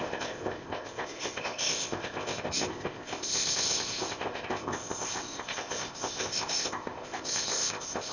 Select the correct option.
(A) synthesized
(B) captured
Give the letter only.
A